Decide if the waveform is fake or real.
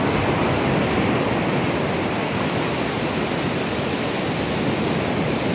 real